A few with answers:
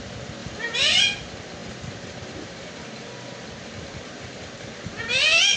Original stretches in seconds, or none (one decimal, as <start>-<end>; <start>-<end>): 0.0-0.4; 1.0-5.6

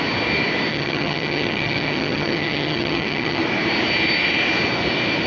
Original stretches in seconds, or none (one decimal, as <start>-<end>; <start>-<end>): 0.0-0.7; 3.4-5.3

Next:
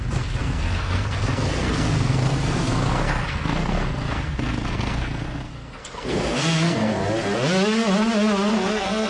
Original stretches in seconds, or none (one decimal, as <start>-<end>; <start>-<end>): 7.0-8.5

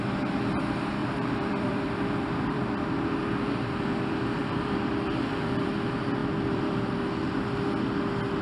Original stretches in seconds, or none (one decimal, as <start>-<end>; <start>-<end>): 0.0-1.0; 5.8-6.2; 7.4-8.4